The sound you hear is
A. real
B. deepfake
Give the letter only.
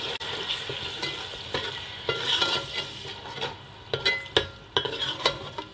A